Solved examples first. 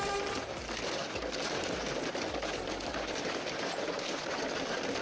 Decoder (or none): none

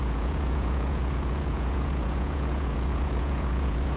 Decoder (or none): vocoder, Vocos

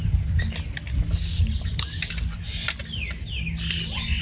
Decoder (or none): none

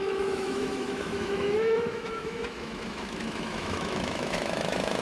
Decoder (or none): autoencoder, DAC-VAE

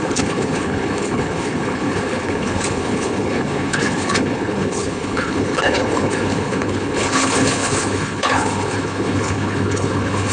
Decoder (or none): codec, HILCodec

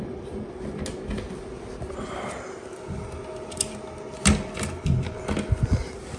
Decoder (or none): none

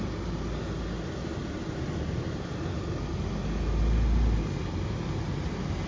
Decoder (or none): none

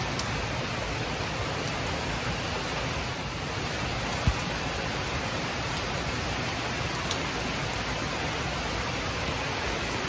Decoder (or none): none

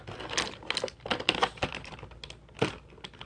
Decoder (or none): none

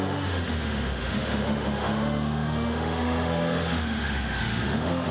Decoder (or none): autoencoder, DAC-VAE